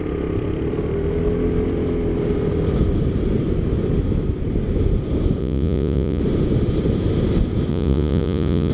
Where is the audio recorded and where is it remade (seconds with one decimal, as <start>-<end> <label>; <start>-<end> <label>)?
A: 0.0-5.4 recorded; 5.4-6.2 remade; 6.2-7.7 recorded; 7.7-8.7 remade